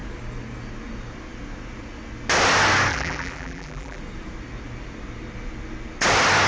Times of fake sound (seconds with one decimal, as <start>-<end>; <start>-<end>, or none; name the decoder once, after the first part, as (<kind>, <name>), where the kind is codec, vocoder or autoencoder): 2.9-4.0 (vocoder, BigVGAN v2)

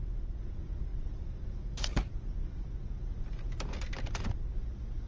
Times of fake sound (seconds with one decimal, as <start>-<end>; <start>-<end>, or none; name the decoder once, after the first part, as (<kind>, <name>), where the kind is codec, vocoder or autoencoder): 0.9-1.7 (vocoder, BigVGAN v2)